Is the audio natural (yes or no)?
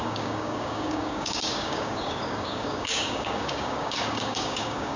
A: no